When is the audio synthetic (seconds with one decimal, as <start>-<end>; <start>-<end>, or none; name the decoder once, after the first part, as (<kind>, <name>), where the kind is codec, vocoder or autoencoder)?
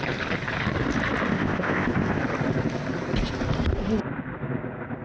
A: 1.3-2.2 (codec, ZipCodec)